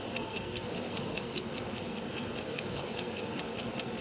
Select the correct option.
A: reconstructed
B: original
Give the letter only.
A